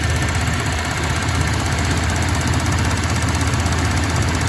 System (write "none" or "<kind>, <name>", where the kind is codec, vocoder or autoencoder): none